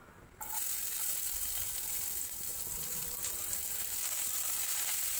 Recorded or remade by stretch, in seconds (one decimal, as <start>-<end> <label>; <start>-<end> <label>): 0.0-5.2 recorded